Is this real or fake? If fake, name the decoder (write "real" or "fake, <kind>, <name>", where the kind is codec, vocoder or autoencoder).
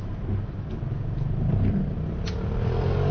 real